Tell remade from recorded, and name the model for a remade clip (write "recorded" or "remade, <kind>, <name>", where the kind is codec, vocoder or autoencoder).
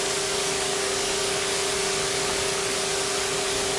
remade, codec, DAC